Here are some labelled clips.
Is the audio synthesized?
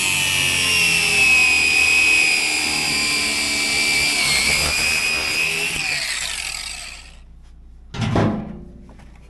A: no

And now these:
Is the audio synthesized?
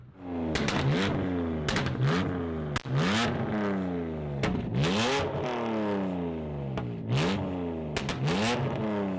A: no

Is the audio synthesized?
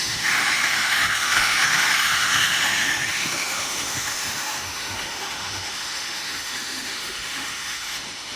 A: yes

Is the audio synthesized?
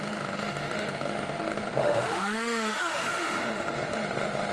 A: yes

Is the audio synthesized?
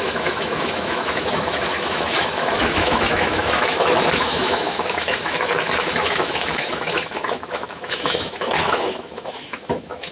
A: yes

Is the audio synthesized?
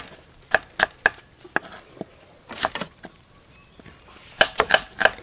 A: no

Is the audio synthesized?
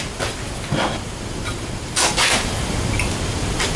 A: no